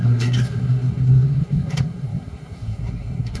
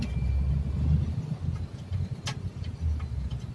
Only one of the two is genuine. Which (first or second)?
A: second